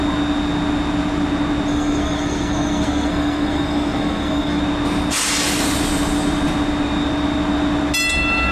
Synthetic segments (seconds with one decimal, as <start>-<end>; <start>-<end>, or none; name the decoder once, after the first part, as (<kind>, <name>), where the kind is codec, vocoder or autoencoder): 1.7-4.6 (codec, SNAC)